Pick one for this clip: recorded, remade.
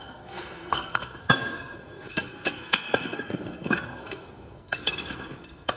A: remade